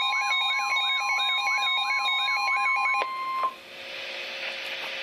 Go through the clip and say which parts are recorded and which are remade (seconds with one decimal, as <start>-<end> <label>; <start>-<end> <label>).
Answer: 0.0-5.0 recorded

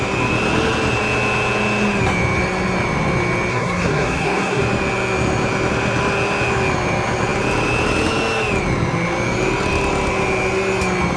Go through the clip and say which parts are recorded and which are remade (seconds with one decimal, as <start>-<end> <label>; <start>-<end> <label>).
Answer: 0.0-3.5 recorded; 3.5-4.6 remade; 4.6-11.2 recorded